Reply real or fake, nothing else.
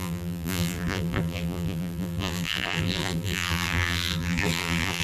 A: fake